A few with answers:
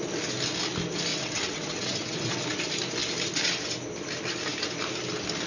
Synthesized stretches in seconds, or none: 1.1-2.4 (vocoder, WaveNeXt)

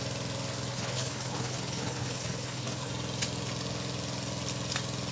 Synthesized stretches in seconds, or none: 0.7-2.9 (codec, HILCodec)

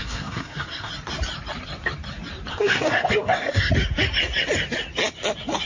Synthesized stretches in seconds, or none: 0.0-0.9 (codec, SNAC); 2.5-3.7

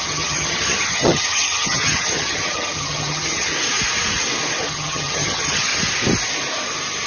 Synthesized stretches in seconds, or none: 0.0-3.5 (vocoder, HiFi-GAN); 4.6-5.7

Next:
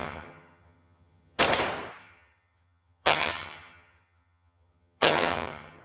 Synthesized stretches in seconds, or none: 0.0-1.4 (vocoder, HiFi-GAN); 2.0-5.8